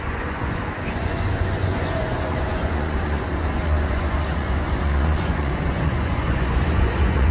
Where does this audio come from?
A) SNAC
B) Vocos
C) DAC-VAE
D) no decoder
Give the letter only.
B